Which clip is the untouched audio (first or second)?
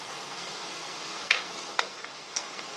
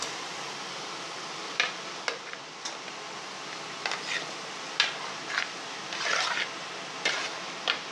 second